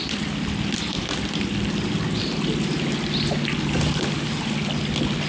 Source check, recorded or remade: recorded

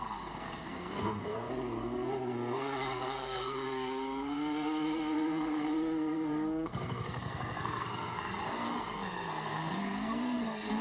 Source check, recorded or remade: remade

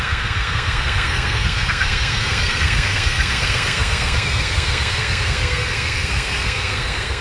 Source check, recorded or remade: remade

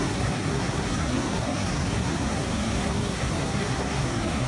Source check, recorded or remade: remade